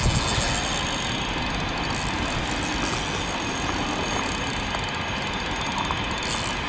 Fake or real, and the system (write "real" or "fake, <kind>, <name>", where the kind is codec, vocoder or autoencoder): real